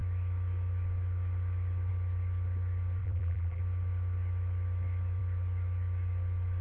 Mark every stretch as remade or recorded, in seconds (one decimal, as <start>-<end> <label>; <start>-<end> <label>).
0.0-3.0 recorded; 3.0-3.6 remade; 3.6-6.6 recorded